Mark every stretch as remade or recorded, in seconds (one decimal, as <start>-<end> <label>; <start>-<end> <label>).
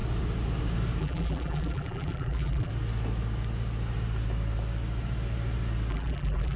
0.0-1.0 recorded; 1.0-2.7 remade; 2.7-5.9 recorded; 5.9-6.6 remade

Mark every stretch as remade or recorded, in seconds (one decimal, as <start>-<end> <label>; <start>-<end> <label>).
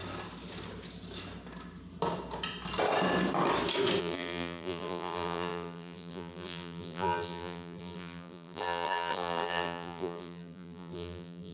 0.0-4.0 recorded; 4.0-11.5 remade